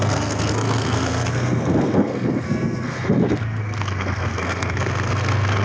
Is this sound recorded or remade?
remade